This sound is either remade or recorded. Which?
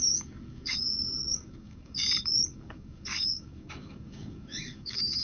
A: remade